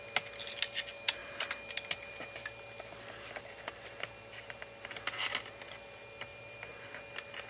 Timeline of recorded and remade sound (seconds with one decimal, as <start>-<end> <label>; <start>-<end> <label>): 0.0-6.3 recorded; 6.3-6.8 remade; 6.8-7.5 recorded

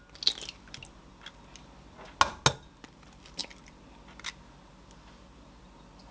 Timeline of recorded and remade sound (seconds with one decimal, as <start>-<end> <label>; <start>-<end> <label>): 0.0-6.1 recorded

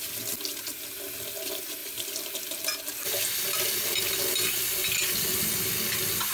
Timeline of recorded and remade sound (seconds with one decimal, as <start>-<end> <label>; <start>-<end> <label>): 0.0-6.3 recorded

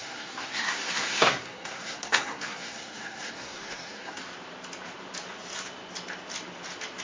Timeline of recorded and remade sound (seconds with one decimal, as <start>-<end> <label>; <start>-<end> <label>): 0.0-4.2 remade; 4.2-7.0 recorded

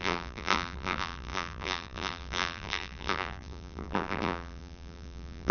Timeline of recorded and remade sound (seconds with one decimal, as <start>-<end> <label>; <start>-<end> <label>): 0.0-5.5 remade

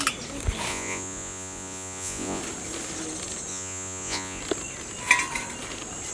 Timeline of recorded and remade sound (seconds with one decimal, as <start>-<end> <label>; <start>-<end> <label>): 0.0-0.7 recorded; 0.7-2.4 remade; 2.4-3.5 recorded; 3.5-4.4 remade; 4.4-6.1 recorded

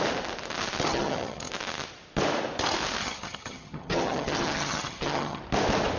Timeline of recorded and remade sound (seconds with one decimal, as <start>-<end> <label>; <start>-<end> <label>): 0.0-0.9 recorded; 0.9-1.5 remade; 1.5-3.0 recorded; 3.0-5.4 remade; 5.4-6.0 recorded